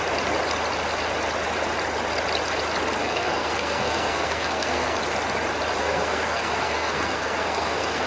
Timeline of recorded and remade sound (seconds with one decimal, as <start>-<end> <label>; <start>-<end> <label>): 0.0-3.0 recorded; 3.0-5.0 remade; 5.0-5.8 recorded; 5.8-8.1 remade

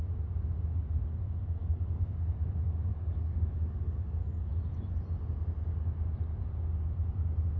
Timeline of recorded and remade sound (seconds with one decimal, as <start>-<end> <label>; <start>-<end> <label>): 0.0-1.6 recorded; 1.6-2.1 remade; 2.1-2.9 recorded; 2.9-4.5 remade; 4.5-7.6 recorded

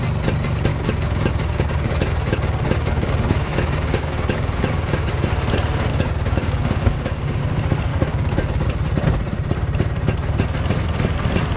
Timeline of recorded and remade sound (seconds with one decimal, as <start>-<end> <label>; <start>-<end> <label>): 0.0-0.7 recorded; 0.7-5.3 remade; 5.3-5.9 recorded; 5.9-7.4 remade; 7.4-7.9 recorded; 7.9-8.7 remade; 8.7-11.6 recorded

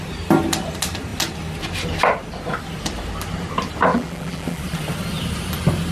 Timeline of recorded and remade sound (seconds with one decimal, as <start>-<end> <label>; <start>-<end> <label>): 0.0-3.9 recorded; 3.9-4.6 remade; 4.6-5.9 recorded

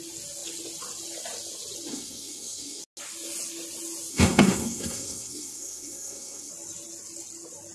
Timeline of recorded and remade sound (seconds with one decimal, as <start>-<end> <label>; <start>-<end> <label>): 0.0-1.9 recorded; 1.9-2.8 remade; 2.8-4.1 recorded; 4.1-6.5 remade; 6.5-7.7 recorded

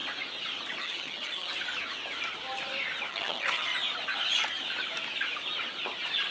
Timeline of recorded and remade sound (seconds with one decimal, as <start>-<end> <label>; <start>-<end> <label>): 0.0-0.8 recorded; 0.8-1.5 remade; 1.5-3.1 recorded; 3.1-3.7 remade; 3.7-6.3 recorded

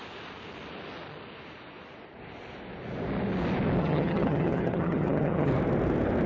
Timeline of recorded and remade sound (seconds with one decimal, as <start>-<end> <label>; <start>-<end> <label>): 0.0-3.8 recorded; 3.8-5.5 remade; 5.5-6.3 recorded

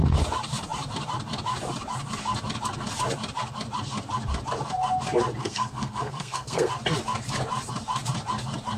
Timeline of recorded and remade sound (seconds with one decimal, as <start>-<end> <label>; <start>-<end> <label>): 0.0-5.4 recorded; 5.4-6.7 remade; 6.7-8.8 recorded